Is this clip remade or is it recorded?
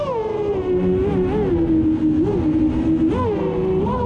recorded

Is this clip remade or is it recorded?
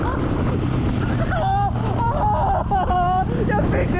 recorded